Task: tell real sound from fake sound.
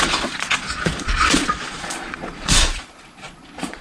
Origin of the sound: fake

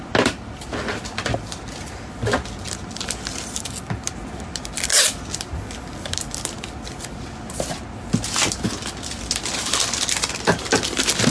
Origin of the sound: real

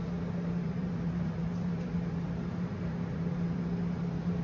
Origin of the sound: fake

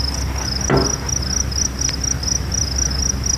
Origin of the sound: real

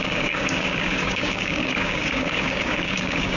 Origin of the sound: fake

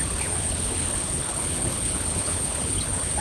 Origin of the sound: fake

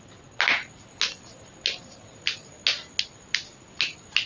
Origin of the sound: real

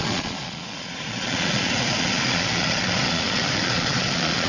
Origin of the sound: fake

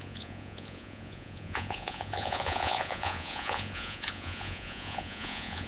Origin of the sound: fake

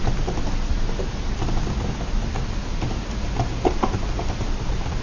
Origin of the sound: real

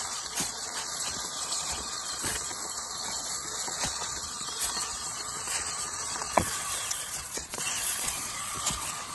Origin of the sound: fake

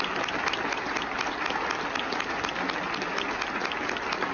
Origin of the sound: real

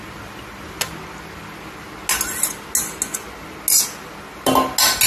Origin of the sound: real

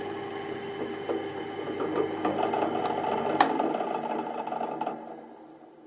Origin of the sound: real